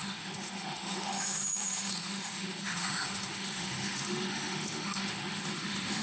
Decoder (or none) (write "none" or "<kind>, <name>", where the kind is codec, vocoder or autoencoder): autoencoder, DAC-VAE